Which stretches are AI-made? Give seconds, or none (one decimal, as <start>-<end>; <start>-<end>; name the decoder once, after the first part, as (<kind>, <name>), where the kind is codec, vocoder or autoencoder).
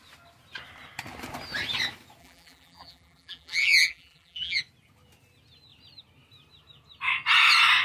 2.2-4.6 (vocoder, BigVGAN v2)